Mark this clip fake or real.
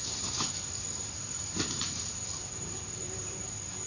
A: fake